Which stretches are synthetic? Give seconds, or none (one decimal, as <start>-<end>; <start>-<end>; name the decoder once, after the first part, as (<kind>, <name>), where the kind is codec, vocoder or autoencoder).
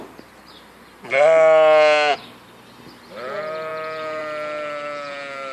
none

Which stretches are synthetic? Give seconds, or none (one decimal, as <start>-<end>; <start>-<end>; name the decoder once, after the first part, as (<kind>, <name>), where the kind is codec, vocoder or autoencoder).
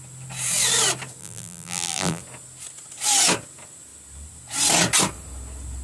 1.2-2.2 (vocoder, BigVGAN v2)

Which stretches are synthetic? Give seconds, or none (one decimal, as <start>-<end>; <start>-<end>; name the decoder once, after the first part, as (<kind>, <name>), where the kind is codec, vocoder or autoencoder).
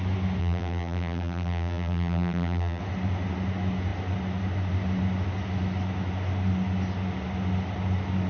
0.4-2.8 (vocoder, BigVGAN v2)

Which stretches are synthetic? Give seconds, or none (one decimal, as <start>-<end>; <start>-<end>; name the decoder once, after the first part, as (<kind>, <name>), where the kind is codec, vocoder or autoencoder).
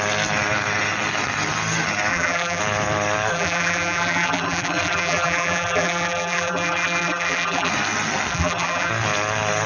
2.1-2.6 (vocoder, BigVGAN v2); 3.3-7.7; 8.3-8.9